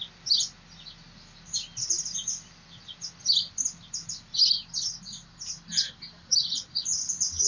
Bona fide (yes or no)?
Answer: yes